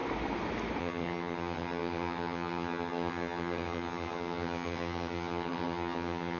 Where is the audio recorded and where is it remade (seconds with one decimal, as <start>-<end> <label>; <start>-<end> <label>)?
0.0-0.8 recorded; 0.8-6.4 remade